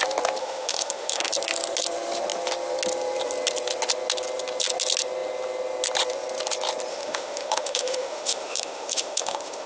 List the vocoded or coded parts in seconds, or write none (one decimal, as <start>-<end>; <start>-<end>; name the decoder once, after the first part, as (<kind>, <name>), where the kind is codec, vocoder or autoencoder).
0.4-1.3 (autoencoder, DAC-VAE); 6.9-9.7